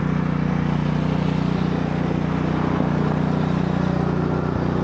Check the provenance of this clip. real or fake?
real